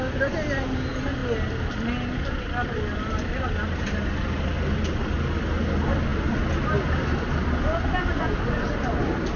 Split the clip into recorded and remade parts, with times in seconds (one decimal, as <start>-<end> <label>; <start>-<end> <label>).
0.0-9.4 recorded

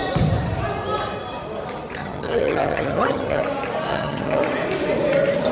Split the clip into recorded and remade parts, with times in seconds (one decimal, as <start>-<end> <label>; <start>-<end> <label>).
0.0-2.0 recorded; 2.0-3.4 remade; 3.4-3.9 recorded; 3.9-4.4 remade; 4.4-5.5 recorded

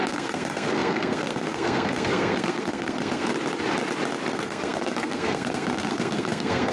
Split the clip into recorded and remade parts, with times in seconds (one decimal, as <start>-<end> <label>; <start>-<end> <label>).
0.0-3.3 remade; 3.3-4.3 recorded; 4.3-6.7 remade

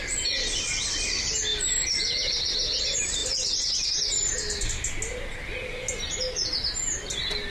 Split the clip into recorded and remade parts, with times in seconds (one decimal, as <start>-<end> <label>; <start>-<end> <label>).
0.0-7.5 recorded